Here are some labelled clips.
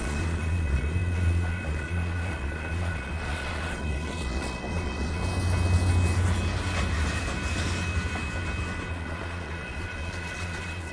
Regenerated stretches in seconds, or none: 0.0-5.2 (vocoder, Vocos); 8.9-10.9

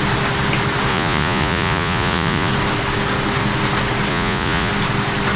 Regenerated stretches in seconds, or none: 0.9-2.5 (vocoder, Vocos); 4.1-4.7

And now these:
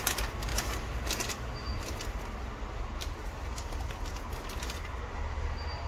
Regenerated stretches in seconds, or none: none

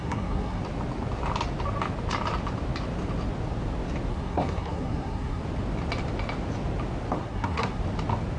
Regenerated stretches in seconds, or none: 0.0-0.6 (codec, SNAC); 4.1-5.4; 7.2-7.8

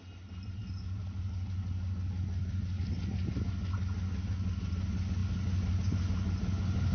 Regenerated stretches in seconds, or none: none